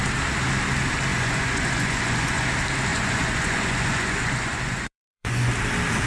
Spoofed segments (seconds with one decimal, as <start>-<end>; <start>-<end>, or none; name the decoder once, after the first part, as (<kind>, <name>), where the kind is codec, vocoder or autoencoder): 1.1-2.5 (vocoder, Vocos); 2.9-5.5

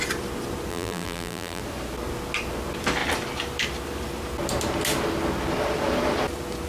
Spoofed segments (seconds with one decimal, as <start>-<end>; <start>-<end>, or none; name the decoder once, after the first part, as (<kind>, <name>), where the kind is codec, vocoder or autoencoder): 0.7-1.6 (vocoder, BigVGAN v2)

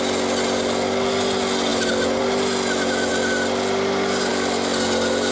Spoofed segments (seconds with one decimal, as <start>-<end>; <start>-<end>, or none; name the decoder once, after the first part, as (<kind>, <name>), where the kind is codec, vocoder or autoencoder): none

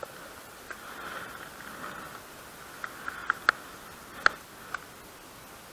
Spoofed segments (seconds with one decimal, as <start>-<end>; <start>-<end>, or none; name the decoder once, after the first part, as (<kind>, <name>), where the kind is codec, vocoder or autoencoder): none